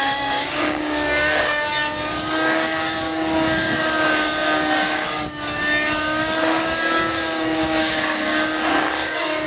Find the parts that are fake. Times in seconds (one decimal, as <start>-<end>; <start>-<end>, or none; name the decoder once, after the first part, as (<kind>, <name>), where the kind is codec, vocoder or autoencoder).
0.0-9.5 (codec, DAC)